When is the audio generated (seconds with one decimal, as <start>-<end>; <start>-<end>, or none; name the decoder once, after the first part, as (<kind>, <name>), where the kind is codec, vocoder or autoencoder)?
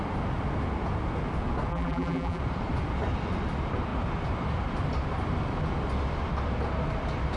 1.7-2.4 (vocoder, BigVGAN v2)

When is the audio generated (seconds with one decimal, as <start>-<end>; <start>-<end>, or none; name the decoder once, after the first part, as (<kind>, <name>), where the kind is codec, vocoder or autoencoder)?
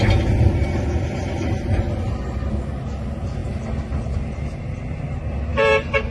5.5-6.1 (vocoder, BigVGAN v2)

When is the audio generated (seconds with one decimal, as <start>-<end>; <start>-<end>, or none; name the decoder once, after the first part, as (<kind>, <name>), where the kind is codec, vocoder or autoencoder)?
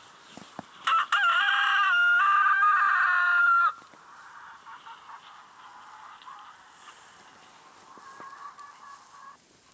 1.3-4.8 (vocoder, BigVGAN v2)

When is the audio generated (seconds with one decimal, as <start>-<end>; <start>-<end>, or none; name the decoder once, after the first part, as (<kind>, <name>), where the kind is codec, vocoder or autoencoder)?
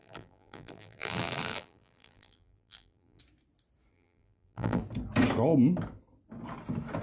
0.0-3.2 (vocoder, BigVGAN v2); 3.9-4.8